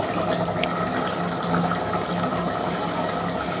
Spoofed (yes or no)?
no